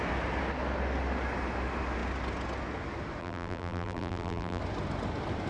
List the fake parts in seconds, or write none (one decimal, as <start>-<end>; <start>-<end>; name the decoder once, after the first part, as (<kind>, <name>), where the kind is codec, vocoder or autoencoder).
3.2-4.6 (vocoder, BigVGAN v2)

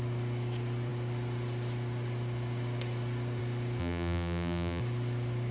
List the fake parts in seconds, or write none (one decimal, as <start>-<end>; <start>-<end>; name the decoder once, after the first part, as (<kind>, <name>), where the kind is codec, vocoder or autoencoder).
3.8-4.8 (vocoder, BigVGAN v2)

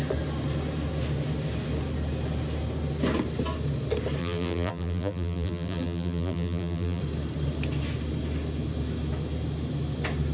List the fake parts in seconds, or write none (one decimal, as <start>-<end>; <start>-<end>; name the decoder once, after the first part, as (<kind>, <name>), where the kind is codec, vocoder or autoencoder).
4.2-7.0 (vocoder, BigVGAN v2)

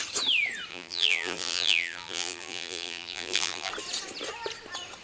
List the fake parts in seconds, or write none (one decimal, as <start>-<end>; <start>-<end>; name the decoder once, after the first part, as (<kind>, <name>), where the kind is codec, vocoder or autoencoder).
0.7-3.7 (vocoder, BigVGAN v2)

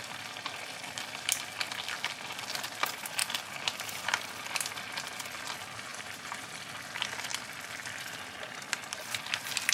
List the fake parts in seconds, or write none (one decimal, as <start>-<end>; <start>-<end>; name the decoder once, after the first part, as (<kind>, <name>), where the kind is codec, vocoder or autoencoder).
5.9-6.5 (vocoder, BigVGAN v2)

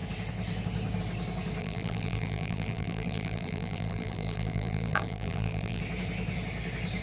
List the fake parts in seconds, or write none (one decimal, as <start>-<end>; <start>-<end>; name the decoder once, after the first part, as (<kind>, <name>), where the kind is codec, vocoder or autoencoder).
1.6-5.8 (vocoder, BigVGAN v2)